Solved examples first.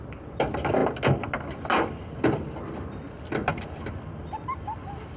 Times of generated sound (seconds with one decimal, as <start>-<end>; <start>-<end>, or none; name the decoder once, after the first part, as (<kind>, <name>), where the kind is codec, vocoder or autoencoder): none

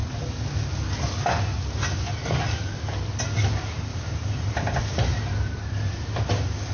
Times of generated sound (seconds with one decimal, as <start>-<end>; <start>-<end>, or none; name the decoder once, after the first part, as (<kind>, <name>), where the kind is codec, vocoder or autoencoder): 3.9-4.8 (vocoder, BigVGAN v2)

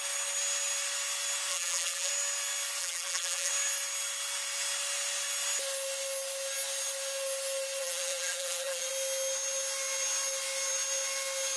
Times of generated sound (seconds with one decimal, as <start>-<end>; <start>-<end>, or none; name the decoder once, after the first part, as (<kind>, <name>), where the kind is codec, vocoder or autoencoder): 1.5-2.1 (vocoder, BigVGAN v2); 2.8-3.5; 7.8-8.9

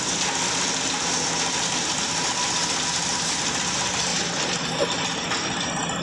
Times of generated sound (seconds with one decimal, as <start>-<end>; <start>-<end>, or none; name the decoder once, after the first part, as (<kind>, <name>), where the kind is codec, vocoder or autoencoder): none

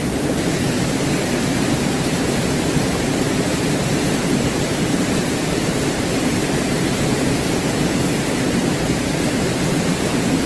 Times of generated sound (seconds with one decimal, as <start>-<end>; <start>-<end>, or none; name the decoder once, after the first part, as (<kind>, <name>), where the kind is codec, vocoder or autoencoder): 1.5-6.1 (vocoder, BigVGAN v2); 8.6-10.5

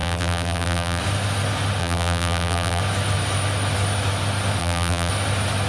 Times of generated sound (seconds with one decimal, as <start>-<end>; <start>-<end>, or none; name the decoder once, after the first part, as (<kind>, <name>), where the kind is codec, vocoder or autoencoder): 0.0-1.0 (vocoder, BigVGAN v2); 1.8-2.8; 4.6-5.1